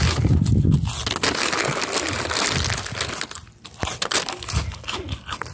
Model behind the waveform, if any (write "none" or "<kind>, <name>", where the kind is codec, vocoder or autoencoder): none